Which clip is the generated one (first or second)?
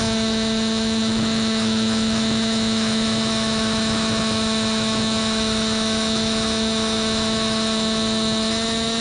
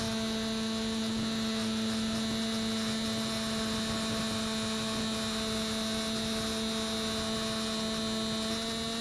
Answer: first